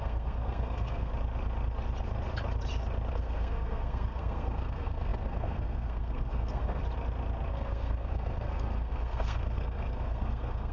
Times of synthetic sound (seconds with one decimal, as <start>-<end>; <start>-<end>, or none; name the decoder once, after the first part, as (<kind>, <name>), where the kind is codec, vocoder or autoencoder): 0.0-1.1 (codec, SNAC); 3.1-6.8; 7.5-10.7